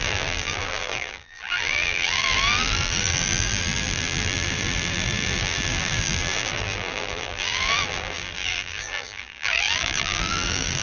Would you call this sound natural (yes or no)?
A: no